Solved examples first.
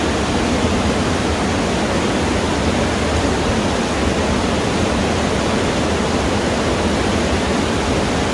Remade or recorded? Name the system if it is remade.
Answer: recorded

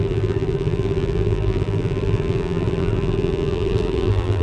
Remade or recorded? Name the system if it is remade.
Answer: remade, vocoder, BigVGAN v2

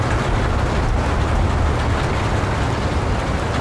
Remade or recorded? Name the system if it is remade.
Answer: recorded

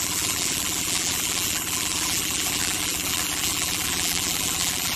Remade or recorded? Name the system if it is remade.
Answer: remade, vocoder, BigVGAN v2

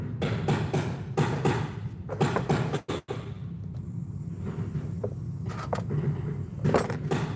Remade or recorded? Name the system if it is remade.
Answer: recorded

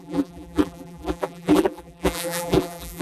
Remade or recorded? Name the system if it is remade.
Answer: remade, vocoder, BigVGAN v2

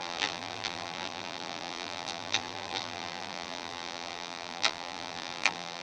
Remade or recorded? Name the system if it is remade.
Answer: remade, vocoder, BigVGAN v2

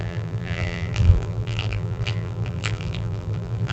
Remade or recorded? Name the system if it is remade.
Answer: remade, vocoder, BigVGAN v2